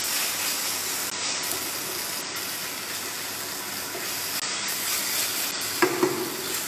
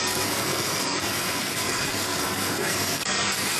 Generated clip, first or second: second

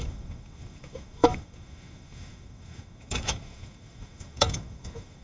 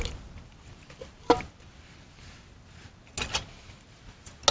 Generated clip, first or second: first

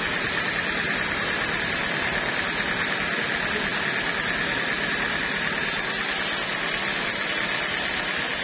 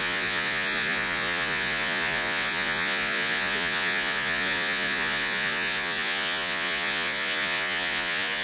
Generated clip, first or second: second